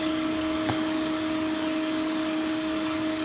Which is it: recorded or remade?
remade